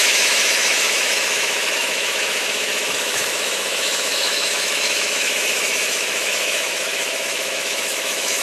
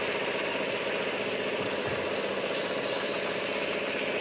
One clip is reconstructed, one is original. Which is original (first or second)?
second